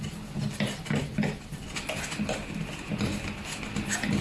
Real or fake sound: real